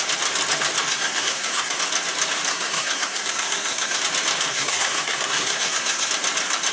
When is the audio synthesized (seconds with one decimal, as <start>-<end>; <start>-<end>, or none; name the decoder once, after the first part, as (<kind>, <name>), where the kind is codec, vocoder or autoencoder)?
0.9-1.8 (codec, SNAC); 2.5-4.0; 4.5-6.1